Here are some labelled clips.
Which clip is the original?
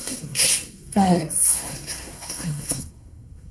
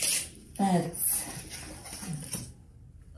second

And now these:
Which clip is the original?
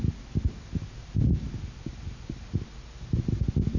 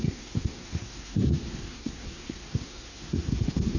first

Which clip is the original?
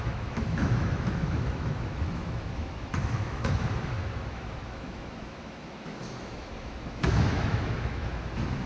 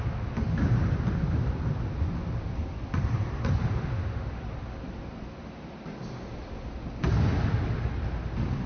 second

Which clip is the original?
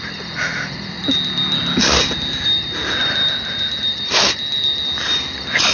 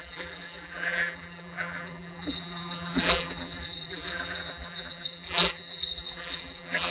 first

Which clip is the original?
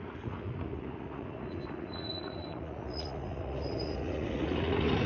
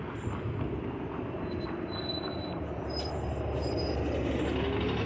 second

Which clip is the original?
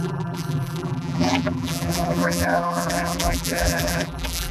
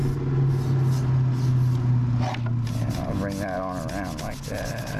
second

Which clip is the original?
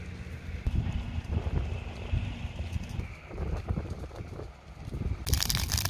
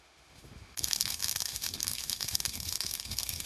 first